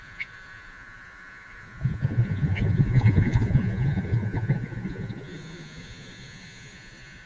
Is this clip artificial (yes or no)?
yes